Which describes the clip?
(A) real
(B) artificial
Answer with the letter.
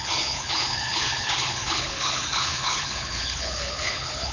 B